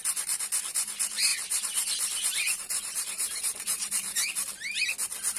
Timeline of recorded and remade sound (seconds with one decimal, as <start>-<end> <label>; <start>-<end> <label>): 0.0-1.3 recorded; 1.3-4.3 remade; 4.3-5.4 recorded